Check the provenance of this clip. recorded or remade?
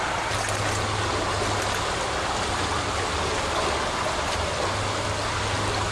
recorded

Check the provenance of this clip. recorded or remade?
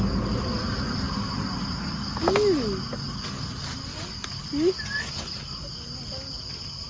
recorded